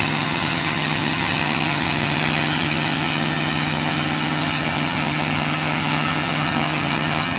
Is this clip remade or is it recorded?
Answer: remade